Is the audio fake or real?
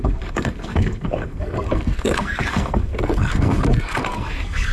fake